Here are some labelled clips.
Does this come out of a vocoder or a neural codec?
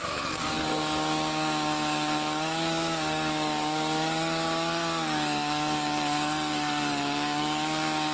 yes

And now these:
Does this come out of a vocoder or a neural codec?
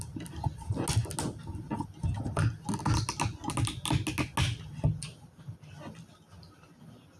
no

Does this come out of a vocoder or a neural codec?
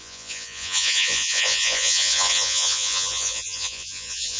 yes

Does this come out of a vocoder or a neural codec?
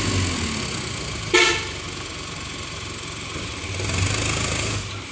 no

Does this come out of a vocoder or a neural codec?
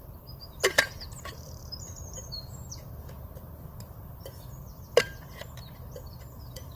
yes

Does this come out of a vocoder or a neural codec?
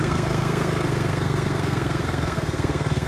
yes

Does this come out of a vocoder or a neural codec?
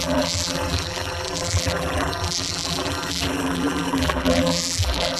yes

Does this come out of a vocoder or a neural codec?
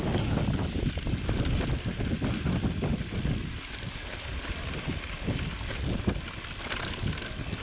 no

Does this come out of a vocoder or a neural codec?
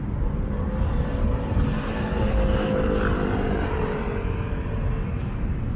no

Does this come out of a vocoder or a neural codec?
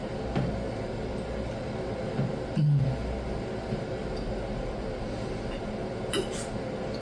no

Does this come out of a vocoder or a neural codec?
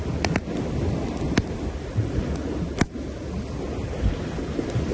no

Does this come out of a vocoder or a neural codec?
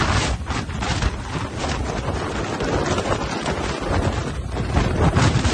no